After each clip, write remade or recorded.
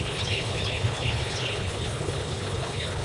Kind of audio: remade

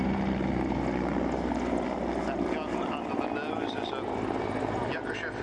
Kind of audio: recorded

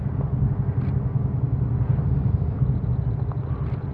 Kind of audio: recorded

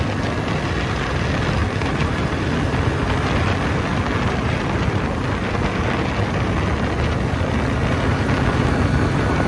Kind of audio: recorded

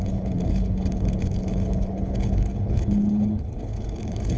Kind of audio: remade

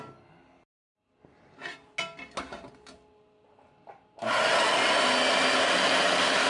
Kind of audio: recorded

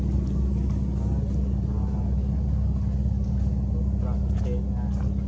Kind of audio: recorded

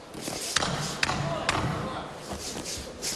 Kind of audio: recorded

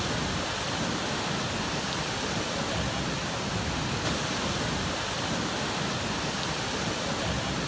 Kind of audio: recorded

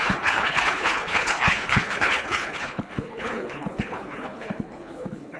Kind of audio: remade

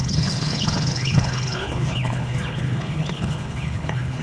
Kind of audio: remade